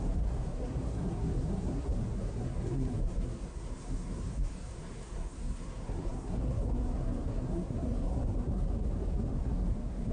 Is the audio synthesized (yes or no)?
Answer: yes